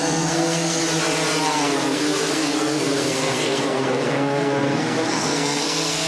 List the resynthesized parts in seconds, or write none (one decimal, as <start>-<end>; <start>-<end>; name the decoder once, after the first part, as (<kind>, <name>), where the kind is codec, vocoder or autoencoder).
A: 0.0-0.8 (codec, SNAC); 1.4-6.1